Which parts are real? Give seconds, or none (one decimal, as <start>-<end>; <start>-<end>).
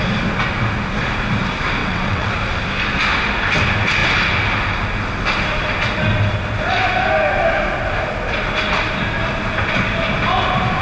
0.0-1.8; 2.3-10.8